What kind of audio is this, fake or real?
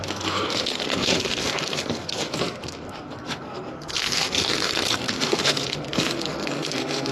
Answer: fake